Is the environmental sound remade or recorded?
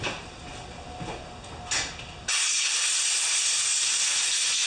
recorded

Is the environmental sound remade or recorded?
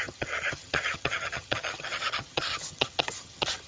remade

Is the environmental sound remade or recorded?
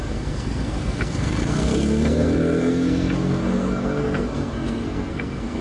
remade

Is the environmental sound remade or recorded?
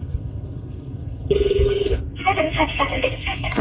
remade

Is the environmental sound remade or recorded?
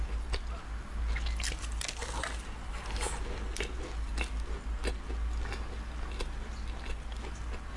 recorded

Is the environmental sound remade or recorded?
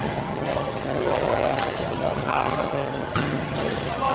remade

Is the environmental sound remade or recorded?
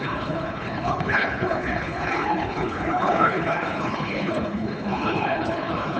remade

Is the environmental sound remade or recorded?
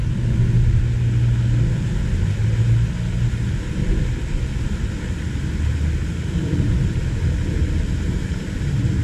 recorded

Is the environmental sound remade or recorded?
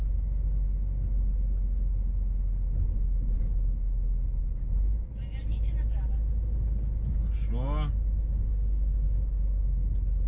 recorded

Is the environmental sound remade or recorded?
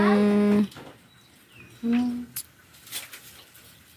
recorded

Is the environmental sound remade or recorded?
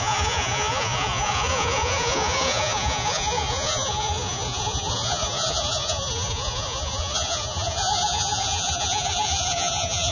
remade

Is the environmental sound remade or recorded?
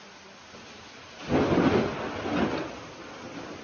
recorded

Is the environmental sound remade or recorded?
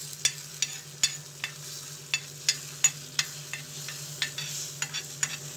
recorded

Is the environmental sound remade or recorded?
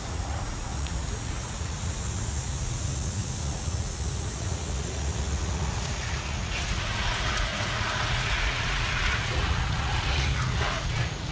remade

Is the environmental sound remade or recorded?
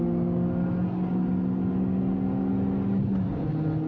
recorded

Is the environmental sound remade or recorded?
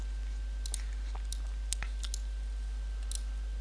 recorded